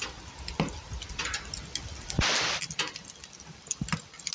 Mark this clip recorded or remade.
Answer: recorded